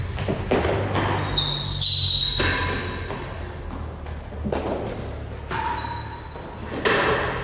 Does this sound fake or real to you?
real